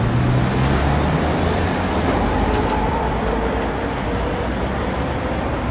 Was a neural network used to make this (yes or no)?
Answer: no